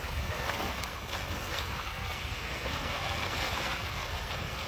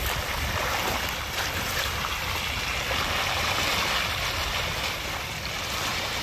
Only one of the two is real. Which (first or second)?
second